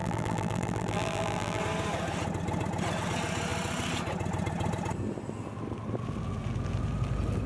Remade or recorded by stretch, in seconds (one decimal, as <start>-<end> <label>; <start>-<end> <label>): 0.0-1.6 remade; 1.6-7.5 recorded